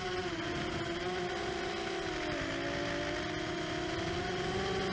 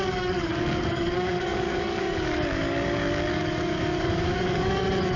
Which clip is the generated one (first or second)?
second